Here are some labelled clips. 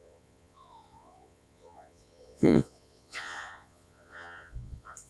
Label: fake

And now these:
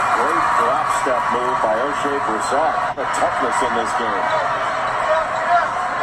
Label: real